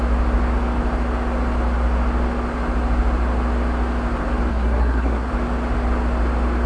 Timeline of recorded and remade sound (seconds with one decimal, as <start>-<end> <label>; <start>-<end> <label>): 0.0-4.5 recorded; 4.5-5.3 remade; 5.3-6.7 recorded